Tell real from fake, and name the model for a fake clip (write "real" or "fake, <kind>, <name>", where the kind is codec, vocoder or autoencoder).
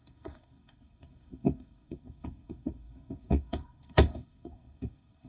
fake, codec, SNAC